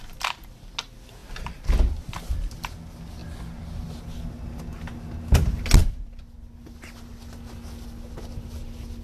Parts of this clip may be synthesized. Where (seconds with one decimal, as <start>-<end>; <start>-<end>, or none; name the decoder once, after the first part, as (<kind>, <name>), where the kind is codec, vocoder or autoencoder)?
none